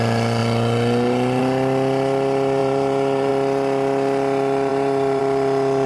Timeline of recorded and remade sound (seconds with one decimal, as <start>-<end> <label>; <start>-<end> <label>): 0.0-2.6 recorded; 2.6-3.3 remade; 3.3-4.7 recorded; 4.7-5.2 remade; 5.2-5.9 recorded